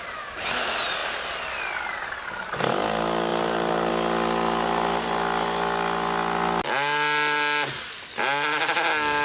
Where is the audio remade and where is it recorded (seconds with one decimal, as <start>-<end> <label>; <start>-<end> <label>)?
0.0-9.2 recorded